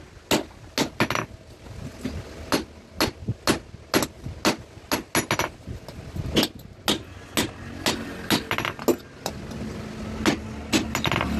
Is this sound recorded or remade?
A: recorded